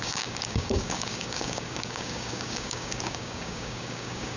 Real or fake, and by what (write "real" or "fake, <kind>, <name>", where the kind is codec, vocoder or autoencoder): fake, codec, DAC